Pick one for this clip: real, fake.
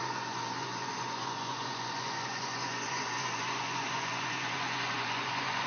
fake